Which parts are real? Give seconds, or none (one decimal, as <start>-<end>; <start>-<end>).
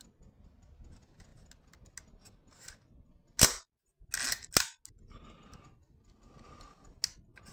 0.0-7.5